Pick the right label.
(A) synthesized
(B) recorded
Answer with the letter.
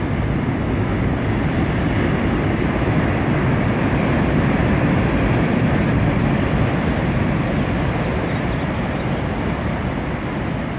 B